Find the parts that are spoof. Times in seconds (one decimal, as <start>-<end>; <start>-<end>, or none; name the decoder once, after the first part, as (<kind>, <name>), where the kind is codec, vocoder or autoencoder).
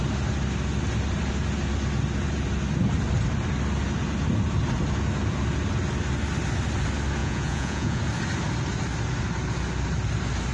7.2-8.0 (vocoder, Vocos)